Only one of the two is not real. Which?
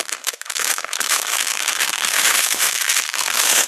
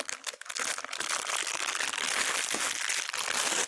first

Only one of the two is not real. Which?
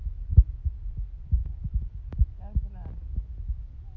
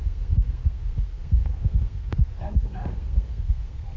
second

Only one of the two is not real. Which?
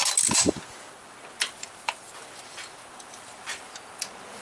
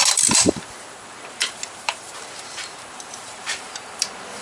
second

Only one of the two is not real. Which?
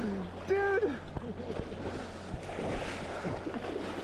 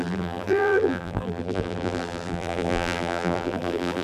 second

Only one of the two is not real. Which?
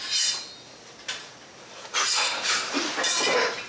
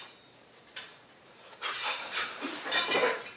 second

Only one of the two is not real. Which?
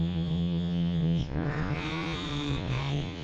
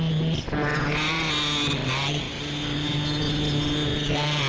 first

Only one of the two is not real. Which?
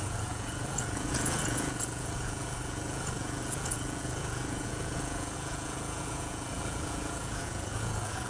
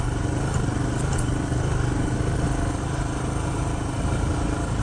first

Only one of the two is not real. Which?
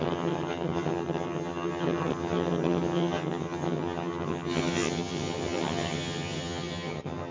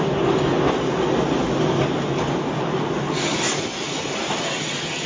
first